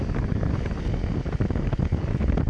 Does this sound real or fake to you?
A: real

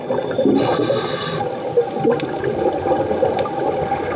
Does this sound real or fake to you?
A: real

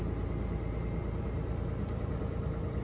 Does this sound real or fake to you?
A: real